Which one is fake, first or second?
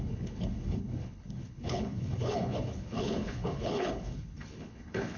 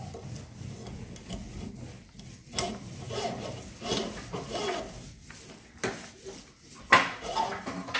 first